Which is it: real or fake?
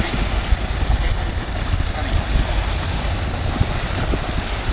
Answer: real